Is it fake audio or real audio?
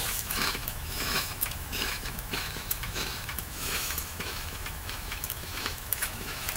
fake